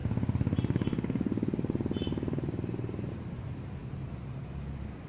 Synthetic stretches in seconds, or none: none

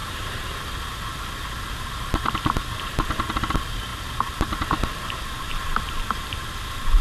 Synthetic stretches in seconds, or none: 0.0-0.6 (vocoder, BigVGAN v2)

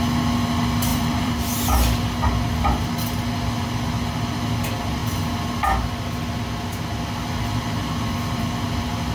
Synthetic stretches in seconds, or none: 0.9-1.4 (vocoder, BigVGAN v2)

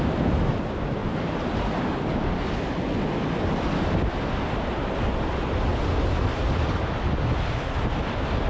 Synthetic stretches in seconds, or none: 1.0-1.7 (vocoder, BigVGAN v2)

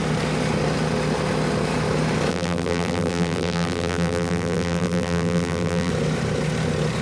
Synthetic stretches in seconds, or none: 2.3-5.9 (vocoder, BigVGAN v2)

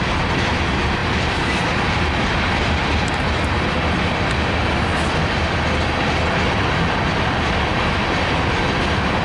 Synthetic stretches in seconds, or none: none

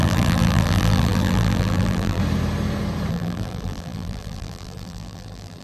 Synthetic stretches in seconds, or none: 0.0-2.2 (vocoder, BigVGAN v2); 3.1-5.6